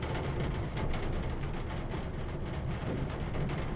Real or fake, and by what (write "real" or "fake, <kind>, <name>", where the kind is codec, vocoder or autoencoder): real